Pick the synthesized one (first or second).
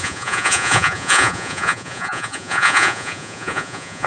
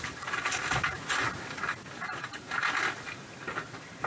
first